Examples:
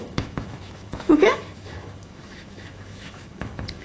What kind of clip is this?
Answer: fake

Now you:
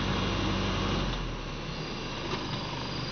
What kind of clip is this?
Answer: real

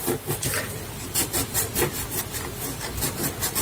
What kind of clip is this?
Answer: real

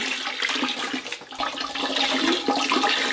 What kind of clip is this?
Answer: real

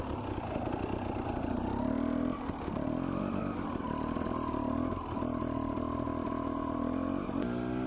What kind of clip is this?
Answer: real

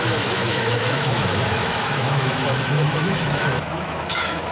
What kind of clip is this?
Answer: fake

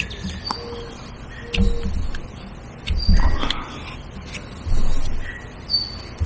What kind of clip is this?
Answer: real